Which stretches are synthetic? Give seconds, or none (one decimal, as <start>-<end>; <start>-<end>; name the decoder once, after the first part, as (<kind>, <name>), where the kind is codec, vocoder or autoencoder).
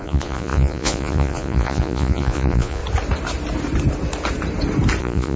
0.0-2.8 (vocoder, Vocos); 5.0-5.4